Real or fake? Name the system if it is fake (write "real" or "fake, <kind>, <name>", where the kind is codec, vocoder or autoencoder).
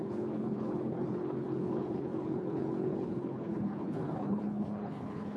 fake, codec, HILCodec